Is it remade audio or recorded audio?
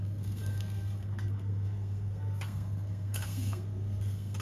remade